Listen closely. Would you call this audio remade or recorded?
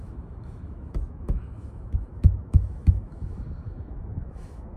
remade